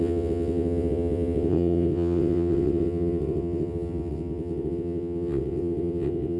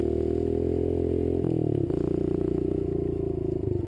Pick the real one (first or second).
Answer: second